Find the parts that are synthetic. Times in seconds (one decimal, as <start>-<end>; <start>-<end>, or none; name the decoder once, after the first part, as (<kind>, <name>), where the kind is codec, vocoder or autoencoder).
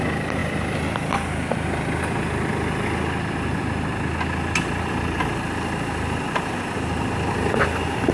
none